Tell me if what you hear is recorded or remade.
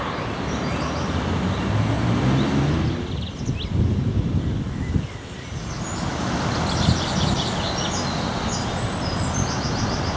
recorded